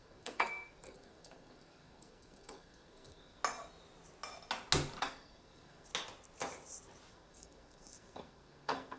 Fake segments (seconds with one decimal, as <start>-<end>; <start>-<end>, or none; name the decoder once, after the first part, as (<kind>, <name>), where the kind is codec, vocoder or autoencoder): 0.0-3.4 (codec, SNAC); 5.0-5.9; 7.1-9.0